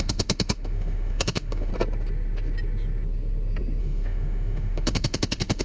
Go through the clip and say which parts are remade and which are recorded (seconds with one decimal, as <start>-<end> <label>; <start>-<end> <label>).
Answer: 0.0-1.7 remade; 1.7-3.8 recorded; 3.8-5.6 remade